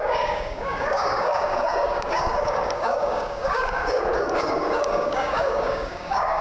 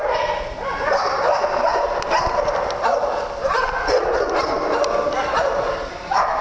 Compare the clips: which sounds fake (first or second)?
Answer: first